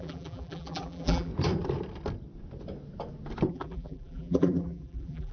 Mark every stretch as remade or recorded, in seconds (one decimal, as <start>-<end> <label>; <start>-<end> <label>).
0.0-1.3 remade; 1.3-3.5 recorded; 3.5-5.3 remade